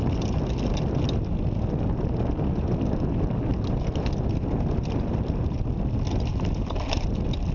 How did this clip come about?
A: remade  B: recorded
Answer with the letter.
B